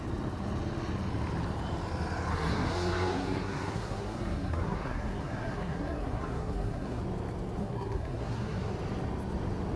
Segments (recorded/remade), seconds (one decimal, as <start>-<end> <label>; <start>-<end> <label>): 0.0-2.3 recorded; 2.3-7.0 remade; 7.0-7.6 recorded; 7.6-8.7 remade; 8.7-9.8 recorded